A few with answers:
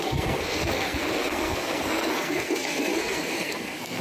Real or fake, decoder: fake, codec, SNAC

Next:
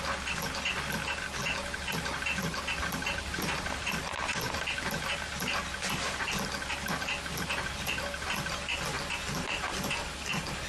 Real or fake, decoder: real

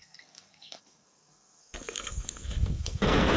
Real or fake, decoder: fake, codec, SNAC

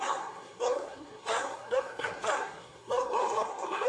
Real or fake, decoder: fake, codec, SNAC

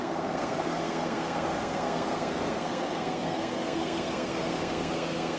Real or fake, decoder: fake, codec, SNAC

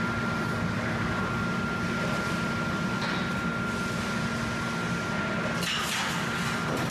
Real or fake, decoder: real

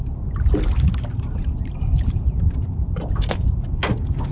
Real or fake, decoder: real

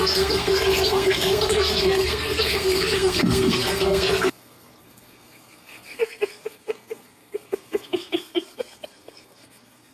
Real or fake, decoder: fake, codec, SNAC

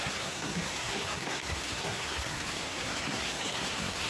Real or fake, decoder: fake, codec, SNAC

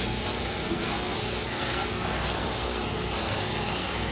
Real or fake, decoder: fake, codec, SNAC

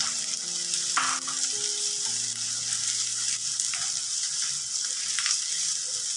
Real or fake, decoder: real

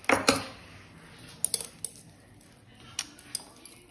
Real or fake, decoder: real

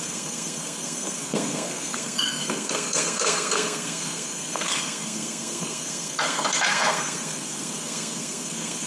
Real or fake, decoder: fake, codec, SNAC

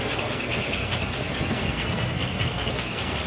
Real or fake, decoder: fake, codec, SNAC